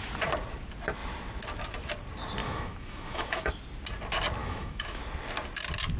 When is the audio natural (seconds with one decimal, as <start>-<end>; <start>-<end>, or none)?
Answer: 0.0-2.4; 3.5-4.4; 5.0-6.0